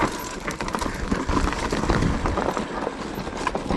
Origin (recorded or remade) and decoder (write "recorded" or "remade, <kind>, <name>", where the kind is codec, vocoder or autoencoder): recorded